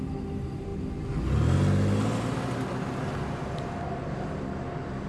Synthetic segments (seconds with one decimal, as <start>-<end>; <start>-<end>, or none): none